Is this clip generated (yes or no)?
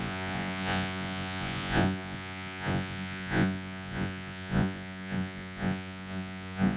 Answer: yes